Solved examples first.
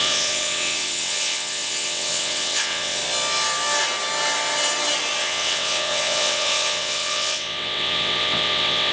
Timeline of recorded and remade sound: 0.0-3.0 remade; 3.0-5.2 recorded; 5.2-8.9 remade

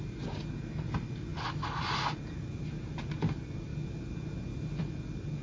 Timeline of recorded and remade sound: 0.0-5.4 recorded

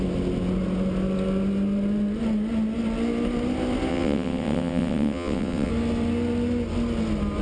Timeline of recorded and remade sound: 0.0-3.9 recorded; 3.9-5.7 remade; 5.7-7.4 recorded

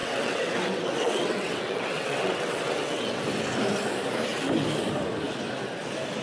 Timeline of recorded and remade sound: 0.0-3.2 remade; 3.2-6.2 recorded

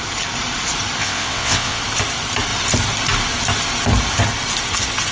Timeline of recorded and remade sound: 0.0-1.0 recorded; 1.0-1.8 remade; 1.8-5.1 recorded

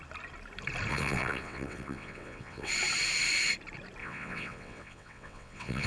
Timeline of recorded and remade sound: 0.0-0.9 recorded; 0.9-2.7 remade; 2.7-4.0 recorded; 4.0-5.9 remade